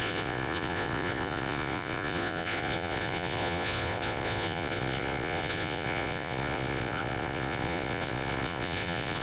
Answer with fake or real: fake